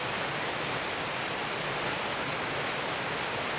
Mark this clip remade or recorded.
recorded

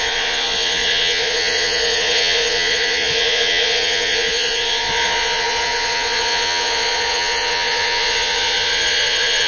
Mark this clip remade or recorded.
remade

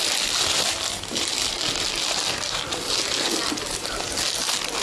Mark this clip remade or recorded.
recorded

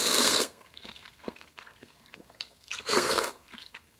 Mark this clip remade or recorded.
remade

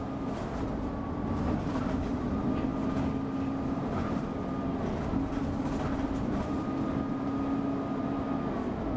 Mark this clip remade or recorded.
recorded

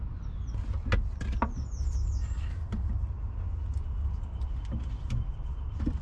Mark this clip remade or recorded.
recorded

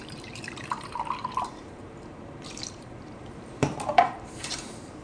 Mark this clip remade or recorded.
remade